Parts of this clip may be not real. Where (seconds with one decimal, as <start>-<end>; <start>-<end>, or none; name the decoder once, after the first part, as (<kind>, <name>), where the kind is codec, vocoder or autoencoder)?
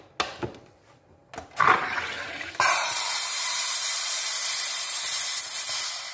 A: none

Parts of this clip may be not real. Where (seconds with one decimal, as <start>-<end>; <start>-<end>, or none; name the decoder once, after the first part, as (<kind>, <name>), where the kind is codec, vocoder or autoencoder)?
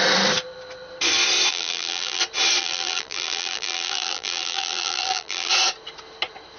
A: 1.5-2.2 (vocoder, BigVGAN v2); 2.6-5.5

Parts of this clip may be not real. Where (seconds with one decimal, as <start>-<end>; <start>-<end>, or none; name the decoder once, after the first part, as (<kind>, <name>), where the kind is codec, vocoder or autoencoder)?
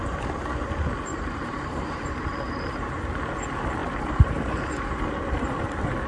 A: 1.1-2.9 (vocoder, BigVGAN v2); 3.8-5.6